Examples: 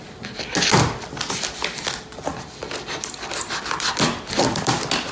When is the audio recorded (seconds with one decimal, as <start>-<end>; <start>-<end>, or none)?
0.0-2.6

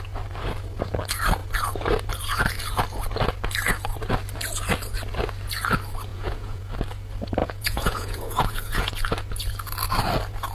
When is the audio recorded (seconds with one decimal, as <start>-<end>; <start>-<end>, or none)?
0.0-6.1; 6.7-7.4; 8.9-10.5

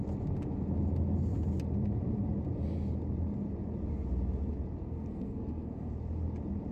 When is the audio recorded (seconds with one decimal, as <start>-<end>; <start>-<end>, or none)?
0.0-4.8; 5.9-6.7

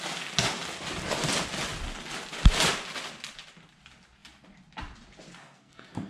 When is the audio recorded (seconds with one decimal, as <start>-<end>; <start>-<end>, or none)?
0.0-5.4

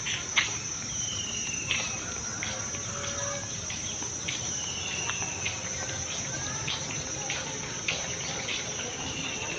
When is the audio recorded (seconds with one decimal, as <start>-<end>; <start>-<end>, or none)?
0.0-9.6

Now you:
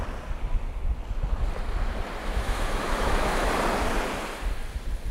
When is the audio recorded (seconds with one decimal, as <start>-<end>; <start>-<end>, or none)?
0.0-2.2; 3.5-5.1

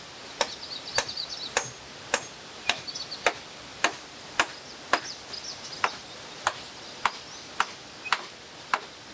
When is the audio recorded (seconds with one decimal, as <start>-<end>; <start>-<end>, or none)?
0.0-9.1